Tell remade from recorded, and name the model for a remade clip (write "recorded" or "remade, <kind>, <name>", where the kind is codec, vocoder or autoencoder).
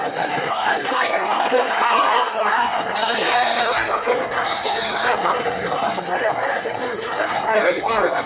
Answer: remade, codec, SNAC